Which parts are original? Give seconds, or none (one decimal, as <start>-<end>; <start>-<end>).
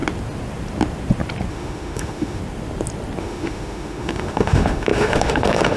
0.0-1.5; 2.4-3.2